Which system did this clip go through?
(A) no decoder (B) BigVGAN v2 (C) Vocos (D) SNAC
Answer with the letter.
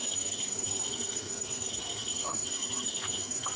D